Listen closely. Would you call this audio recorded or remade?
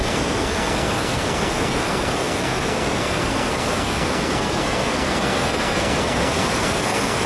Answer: remade